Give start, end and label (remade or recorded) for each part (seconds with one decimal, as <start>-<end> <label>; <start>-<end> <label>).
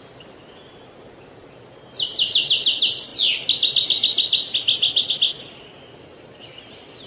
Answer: 0.0-3.1 recorded; 3.1-5.1 remade; 5.1-7.1 recorded